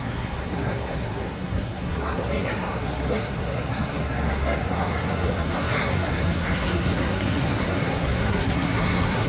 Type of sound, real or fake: fake